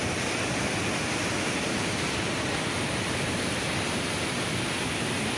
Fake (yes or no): no